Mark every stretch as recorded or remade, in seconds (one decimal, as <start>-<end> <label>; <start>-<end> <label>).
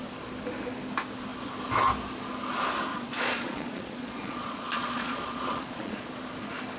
0.0-2.9 recorded; 2.9-6.1 remade; 6.1-6.8 recorded